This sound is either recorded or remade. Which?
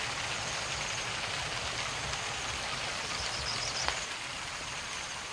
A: recorded